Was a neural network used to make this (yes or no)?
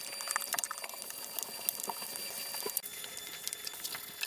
no